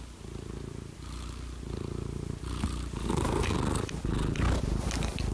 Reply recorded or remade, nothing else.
recorded